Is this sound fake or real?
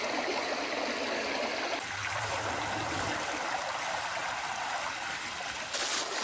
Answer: real